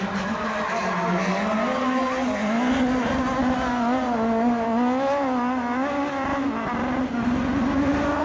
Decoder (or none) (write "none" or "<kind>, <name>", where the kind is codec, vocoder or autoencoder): none